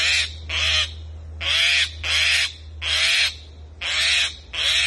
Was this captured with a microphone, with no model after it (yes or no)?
yes